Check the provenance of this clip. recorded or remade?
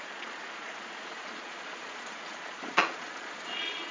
remade